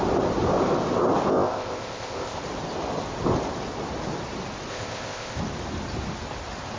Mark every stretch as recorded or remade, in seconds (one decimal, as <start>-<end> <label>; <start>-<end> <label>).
0.0-1.3 recorded; 1.3-2.4 remade; 2.4-4.7 recorded; 4.7-5.4 remade; 5.4-6.8 recorded